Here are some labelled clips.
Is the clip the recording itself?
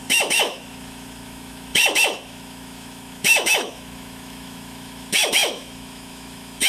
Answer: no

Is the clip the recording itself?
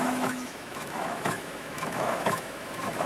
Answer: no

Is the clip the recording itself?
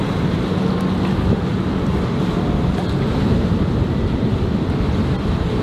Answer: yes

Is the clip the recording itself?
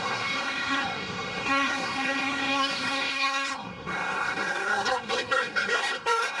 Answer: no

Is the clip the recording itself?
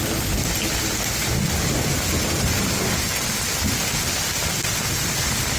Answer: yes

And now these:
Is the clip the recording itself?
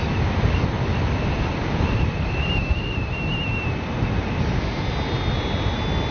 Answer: yes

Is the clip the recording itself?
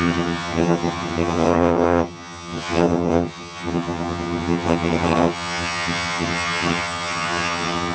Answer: no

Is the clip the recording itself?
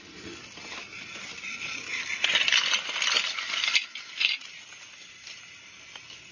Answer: yes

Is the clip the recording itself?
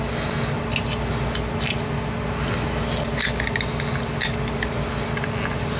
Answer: yes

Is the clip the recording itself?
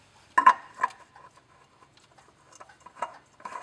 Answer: yes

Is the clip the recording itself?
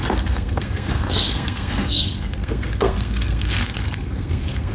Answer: no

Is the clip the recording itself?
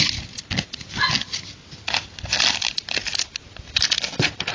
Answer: yes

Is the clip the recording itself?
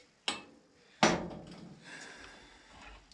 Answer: yes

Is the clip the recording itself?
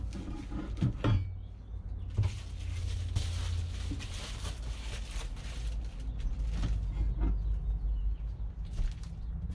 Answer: yes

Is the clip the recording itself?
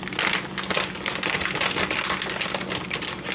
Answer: yes